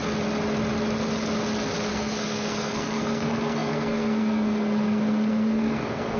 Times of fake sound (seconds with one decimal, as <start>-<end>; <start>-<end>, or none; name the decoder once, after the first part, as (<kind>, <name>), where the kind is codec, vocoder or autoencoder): 1.9-6.2 (codec, SNAC)